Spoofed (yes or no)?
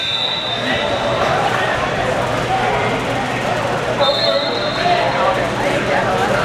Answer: yes